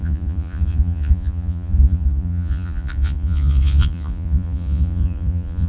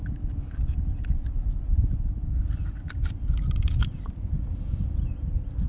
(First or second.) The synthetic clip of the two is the first